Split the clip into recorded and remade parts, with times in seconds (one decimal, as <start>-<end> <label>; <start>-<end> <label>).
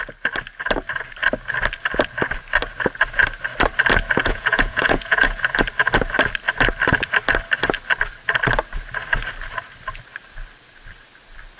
0.0-4.2 recorded; 4.2-5.4 remade; 5.4-11.6 recorded